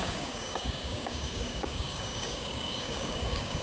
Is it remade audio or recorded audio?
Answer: remade